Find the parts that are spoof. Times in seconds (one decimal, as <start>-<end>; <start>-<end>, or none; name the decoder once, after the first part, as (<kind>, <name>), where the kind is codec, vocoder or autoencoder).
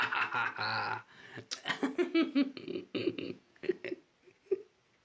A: 3.0-3.7 (vocoder, Vocos)